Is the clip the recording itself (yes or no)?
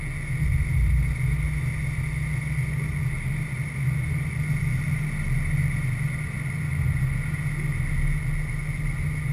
yes